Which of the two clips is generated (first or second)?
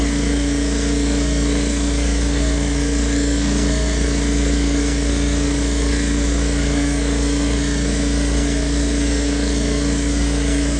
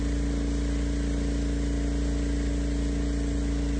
first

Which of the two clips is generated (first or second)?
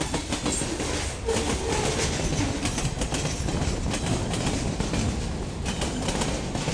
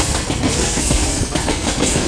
second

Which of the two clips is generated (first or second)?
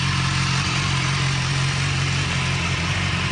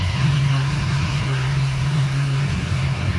second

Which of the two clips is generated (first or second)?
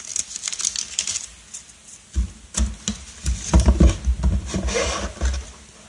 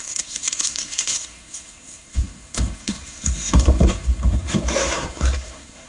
second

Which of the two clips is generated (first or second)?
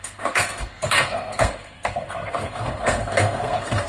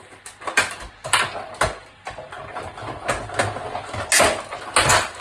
first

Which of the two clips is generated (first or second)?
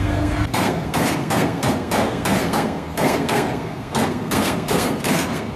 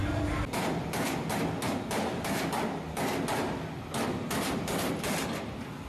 first